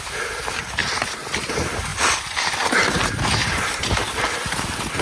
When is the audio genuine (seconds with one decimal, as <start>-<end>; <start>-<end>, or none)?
0.0-3.4; 4.3-5.0